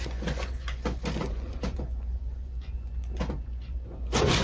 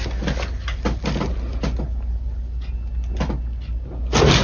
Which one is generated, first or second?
first